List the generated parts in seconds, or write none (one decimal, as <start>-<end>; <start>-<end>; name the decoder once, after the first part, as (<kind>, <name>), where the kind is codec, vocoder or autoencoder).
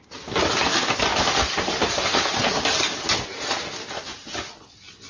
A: none